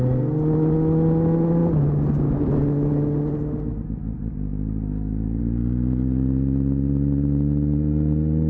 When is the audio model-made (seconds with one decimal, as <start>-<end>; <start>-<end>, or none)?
none